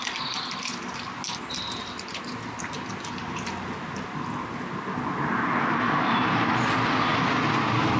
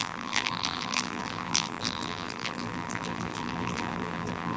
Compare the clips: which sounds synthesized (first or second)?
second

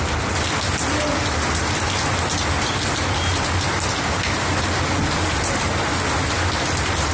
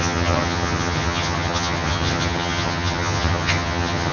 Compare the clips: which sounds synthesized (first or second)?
second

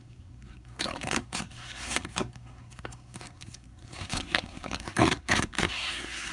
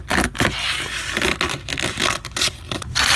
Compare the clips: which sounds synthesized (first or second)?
first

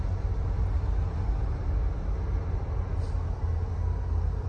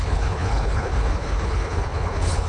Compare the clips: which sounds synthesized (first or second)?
second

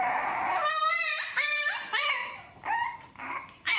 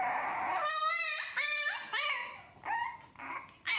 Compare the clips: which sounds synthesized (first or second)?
first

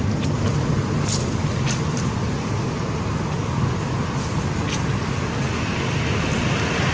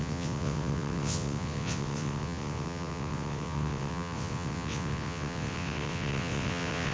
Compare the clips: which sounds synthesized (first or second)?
second